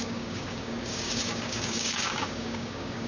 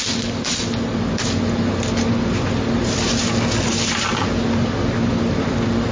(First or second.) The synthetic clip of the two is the first